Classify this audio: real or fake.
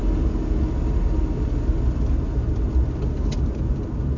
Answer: real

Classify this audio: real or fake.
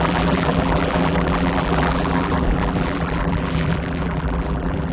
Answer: fake